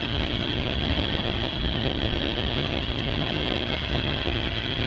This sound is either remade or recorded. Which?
remade